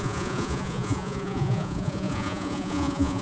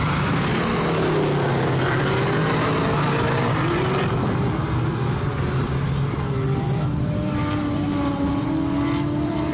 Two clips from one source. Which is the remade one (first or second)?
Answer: first